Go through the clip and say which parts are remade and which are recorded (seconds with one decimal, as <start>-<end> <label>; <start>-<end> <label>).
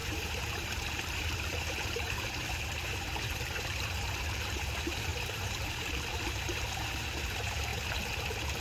0.0-7.7 remade; 7.7-8.6 recorded